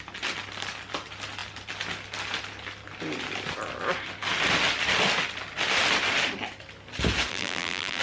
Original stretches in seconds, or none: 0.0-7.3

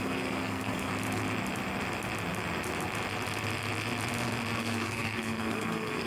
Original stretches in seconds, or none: 0.9-4.6

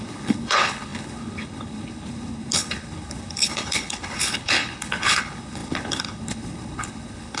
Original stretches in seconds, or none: none